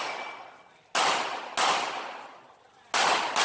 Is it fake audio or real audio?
real